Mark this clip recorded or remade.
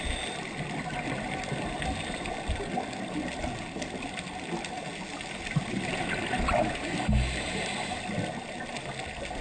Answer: recorded